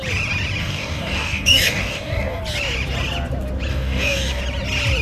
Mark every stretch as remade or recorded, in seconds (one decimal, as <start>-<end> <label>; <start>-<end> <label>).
0.0-0.6 recorded; 0.6-2.4 remade; 2.4-3.7 recorded; 3.7-4.4 remade; 4.4-5.0 recorded